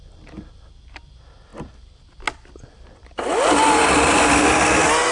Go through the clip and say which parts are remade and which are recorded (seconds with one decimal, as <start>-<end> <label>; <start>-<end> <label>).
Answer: 0.0-5.1 recorded